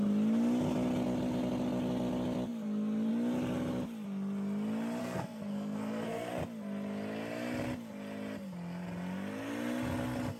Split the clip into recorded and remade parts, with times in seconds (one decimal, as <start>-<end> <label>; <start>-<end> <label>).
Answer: 0.0-5.0 recorded; 5.0-6.3 remade; 6.3-10.4 recorded